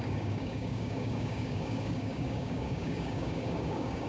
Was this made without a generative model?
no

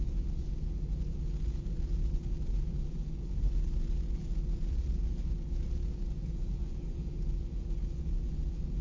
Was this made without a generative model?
no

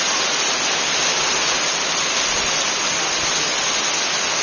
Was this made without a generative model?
yes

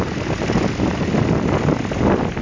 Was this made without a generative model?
yes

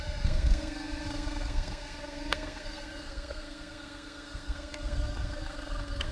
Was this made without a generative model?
no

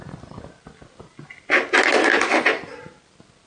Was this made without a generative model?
yes